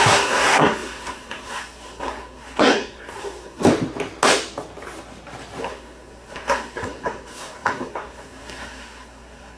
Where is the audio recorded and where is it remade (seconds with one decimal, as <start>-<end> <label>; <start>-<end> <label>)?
0.0-3.6 remade; 3.6-5.6 recorded; 5.6-9.6 remade

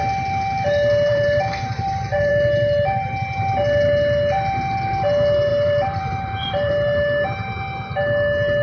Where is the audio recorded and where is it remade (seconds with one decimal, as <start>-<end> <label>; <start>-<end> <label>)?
0.0-1.1 recorded; 1.1-2.3 remade; 2.3-5.5 recorded; 5.5-6.7 remade; 6.7-8.6 recorded

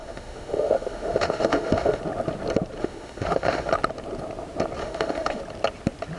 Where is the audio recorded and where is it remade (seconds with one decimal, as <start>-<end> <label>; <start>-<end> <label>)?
0.0-2.0 remade; 2.0-2.8 recorded; 2.8-3.7 remade; 3.7-4.8 recorded; 4.8-5.4 remade; 5.4-6.2 recorded